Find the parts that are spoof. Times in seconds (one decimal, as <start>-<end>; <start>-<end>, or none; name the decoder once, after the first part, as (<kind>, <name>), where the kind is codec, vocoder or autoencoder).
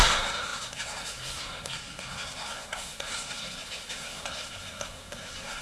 0.0-5.6 (codec, SNAC)